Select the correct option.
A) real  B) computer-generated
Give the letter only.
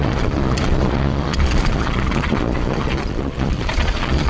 B